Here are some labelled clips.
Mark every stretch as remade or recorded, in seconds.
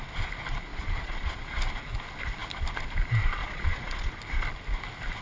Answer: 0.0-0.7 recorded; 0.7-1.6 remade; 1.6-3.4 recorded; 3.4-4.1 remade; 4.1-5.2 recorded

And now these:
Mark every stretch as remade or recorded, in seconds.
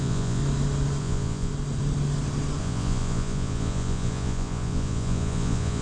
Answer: 0.0-0.4 remade; 0.4-1.0 recorded; 1.0-1.5 remade; 1.5-2.6 recorded; 2.6-5.8 remade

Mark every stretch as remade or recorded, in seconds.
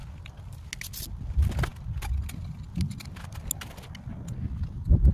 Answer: 0.0-5.1 recorded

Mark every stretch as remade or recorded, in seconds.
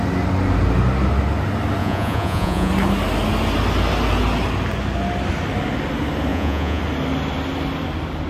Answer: 0.0-1.8 recorded; 1.8-2.7 remade; 2.7-6.3 recorded; 6.3-6.8 remade; 6.8-8.3 recorded